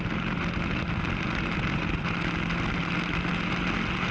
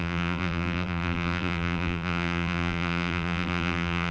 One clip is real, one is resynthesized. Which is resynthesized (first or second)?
second